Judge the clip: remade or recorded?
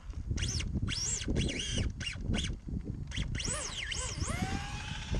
recorded